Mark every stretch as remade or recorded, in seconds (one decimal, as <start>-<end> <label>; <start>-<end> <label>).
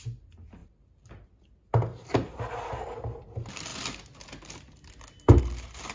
0.0-5.9 recorded